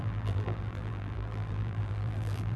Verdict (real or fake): fake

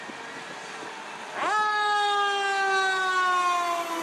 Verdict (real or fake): real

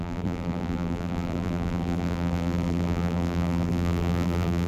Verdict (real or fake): fake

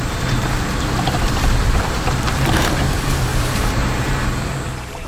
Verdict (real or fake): fake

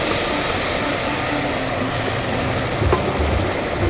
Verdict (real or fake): real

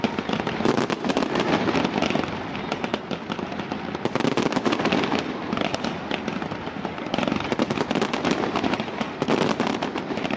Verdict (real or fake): real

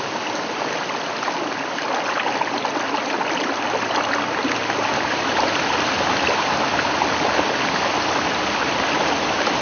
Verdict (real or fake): real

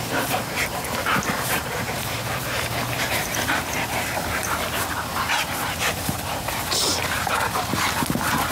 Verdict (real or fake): fake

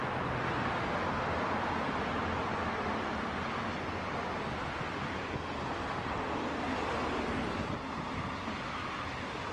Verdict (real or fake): real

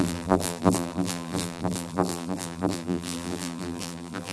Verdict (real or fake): fake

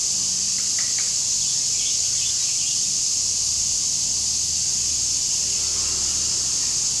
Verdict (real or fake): real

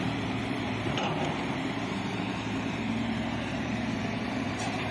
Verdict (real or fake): fake